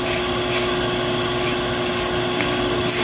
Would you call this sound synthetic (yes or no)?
no